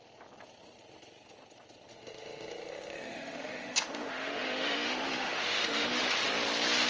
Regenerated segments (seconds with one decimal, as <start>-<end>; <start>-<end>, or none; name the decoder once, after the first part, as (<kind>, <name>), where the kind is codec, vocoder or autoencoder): 1.9-6.0 (autoencoder, DAC-VAE)